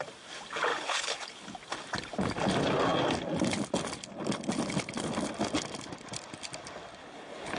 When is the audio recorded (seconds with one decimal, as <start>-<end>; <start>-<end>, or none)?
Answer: 0.0-0.7; 1.3-7.0